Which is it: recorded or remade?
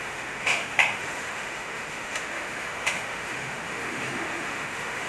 remade